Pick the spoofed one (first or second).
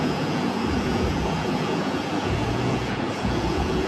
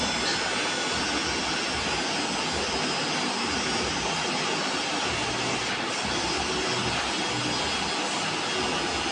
first